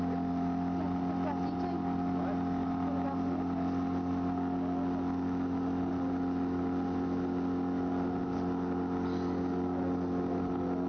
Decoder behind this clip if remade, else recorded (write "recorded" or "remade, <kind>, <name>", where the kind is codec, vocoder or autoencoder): recorded